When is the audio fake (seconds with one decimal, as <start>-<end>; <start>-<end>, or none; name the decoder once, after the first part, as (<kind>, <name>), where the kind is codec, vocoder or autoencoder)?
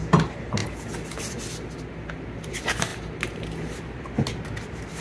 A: none